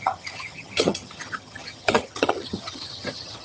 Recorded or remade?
remade